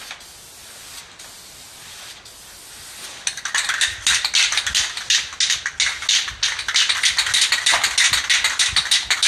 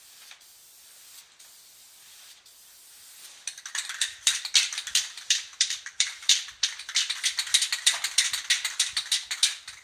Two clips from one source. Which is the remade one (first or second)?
second